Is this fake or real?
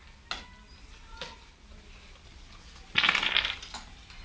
real